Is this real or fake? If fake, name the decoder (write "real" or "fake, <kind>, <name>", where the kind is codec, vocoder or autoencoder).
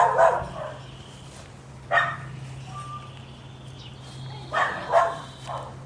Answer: real